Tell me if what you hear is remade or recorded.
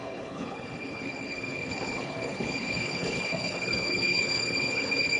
remade